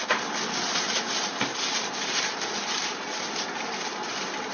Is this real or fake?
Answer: real